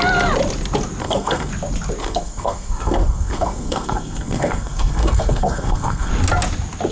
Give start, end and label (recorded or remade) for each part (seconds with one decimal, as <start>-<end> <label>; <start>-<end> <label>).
0.0-1.0 recorded; 1.0-1.5 remade; 1.5-2.0 recorded; 2.0-6.1 remade; 6.1-6.9 recorded